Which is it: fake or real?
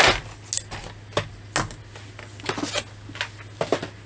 real